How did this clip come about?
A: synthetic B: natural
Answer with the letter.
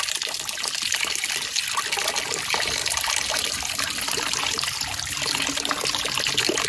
B